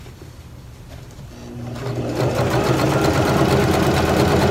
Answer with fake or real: real